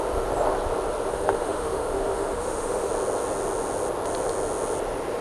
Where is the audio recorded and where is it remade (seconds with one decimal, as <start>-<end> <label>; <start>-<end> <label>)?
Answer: 0.0-1.1 recorded; 1.1-2.9 remade; 2.9-5.2 recorded

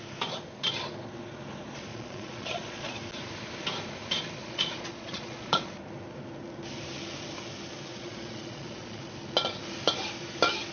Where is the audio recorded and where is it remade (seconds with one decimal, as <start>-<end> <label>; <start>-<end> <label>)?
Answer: 0.0-1.9 recorded; 1.9-3.0 remade; 3.0-4.4 recorded; 4.4-5.7 remade; 5.7-7.9 recorded; 7.9-9.0 remade; 9.0-10.7 recorded

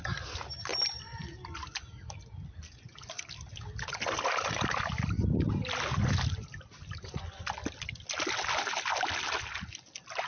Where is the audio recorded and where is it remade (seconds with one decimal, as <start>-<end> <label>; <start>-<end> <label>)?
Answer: 0.0-10.3 recorded

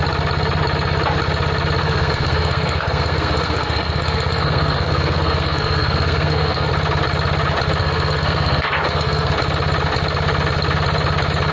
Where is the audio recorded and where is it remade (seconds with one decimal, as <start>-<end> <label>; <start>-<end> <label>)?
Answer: 0.0-1.8 recorded; 1.8-6.7 remade; 6.7-7.8 recorded; 7.8-9.3 remade; 9.3-11.5 recorded

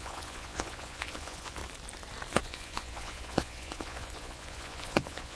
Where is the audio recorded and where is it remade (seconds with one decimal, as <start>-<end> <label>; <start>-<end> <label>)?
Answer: 0.0-1.6 remade; 1.6-2.3 recorded; 2.3-5.4 remade

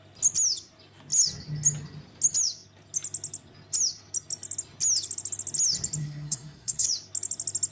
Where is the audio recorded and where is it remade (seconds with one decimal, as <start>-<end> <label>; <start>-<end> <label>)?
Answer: 0.0-6.0 recorded; 6.0-6.9 remade; 6.9-7.7 recorded

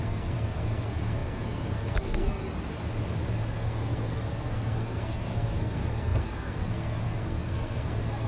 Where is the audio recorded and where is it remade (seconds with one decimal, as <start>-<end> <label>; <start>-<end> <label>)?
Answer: 0.0-2.4 remade; 2.4-3.5 recorded; 3.5-8.3 remade

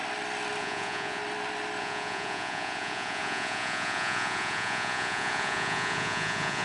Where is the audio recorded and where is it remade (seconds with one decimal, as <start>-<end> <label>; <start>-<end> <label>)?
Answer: 0.0-0.6 recorded; 0.6-1.2 remade; 1.2-1.8 recorded; 1.8-6.6 remade